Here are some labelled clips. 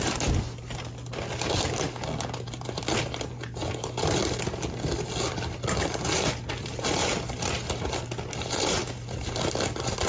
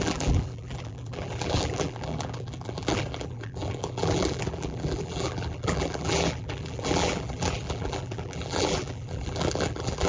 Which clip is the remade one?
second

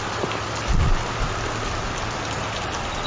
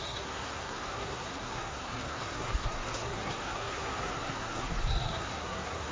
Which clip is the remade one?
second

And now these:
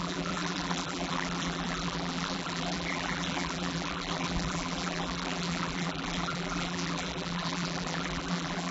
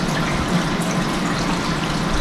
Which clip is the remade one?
first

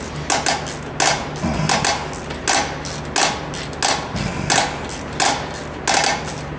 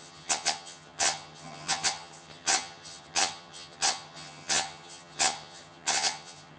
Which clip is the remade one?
second